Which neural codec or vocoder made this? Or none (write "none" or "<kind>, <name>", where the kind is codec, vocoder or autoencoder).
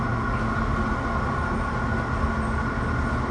none